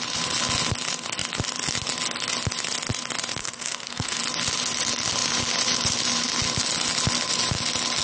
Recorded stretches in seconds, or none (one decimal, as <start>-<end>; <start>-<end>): 0.0-3.4; 4.2-8.0